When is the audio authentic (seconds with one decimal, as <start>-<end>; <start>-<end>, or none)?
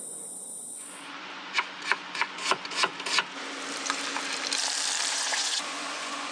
2.9-5.1